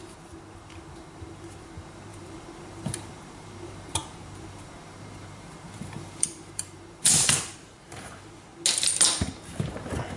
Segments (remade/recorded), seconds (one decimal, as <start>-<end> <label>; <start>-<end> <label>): 0.0-8.5 remade; 8.5-9.2 recorded; 9.2-10.2 remade